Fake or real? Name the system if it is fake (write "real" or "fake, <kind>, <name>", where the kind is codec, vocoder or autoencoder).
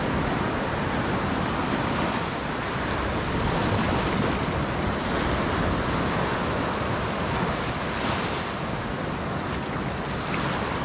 real